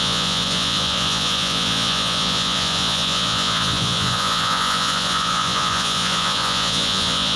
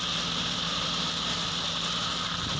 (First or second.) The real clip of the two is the second